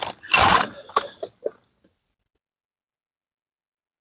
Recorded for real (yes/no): yes